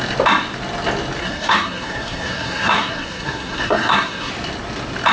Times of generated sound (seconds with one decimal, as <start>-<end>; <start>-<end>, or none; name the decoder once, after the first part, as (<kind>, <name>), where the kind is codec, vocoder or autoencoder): 1.2-4.3 (codec, SNAC)